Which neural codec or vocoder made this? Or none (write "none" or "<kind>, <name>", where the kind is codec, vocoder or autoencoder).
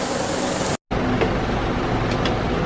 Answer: none